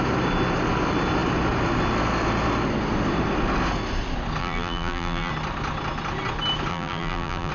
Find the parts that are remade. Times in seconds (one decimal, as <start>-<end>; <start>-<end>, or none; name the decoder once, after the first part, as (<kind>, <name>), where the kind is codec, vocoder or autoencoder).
4.4-5.3 (vocoder, BigVGAN v2); 6.7-7.5